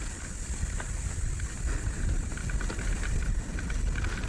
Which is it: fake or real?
real